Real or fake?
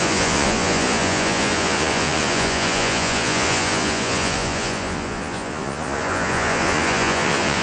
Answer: fake